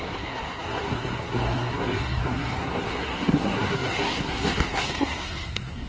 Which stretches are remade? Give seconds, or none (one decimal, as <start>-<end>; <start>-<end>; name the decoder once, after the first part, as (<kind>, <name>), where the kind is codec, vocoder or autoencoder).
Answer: 0.0-5.9 (codec, SNAC)